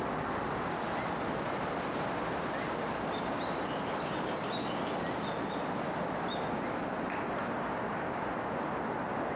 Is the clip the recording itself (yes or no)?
yes